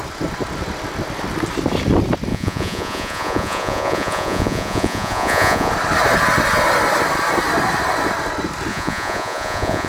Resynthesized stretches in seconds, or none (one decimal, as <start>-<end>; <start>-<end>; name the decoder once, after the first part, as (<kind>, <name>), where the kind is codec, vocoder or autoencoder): 2.3-5.7 (vocoder, Vocos); 8.7-9.9